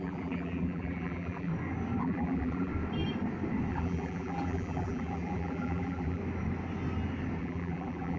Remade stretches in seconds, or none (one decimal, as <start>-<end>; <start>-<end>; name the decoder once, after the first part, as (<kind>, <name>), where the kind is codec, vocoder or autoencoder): 0.0-1.5 (vocoder, BigVGAN v2); 2.0-2.7; 3.7-6.2; 7.4-8.2